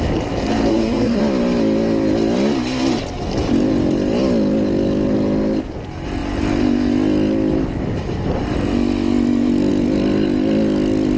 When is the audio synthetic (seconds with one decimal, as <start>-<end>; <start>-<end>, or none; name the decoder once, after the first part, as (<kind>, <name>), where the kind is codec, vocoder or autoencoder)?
0.7-1.2 (codec, SNAC)